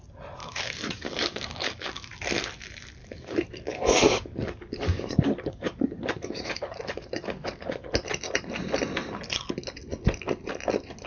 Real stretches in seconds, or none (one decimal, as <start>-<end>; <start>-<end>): 0.0-0.4; 2.1-3.0; 7.9-11.1